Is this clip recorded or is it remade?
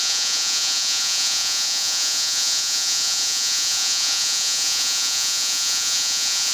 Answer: remade